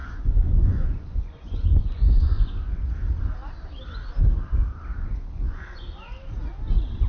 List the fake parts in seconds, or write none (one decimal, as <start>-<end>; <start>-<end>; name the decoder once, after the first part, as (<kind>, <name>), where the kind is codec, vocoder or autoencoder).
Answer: 0.0-2.9 (vocoder, Vocos); 4.9-5.8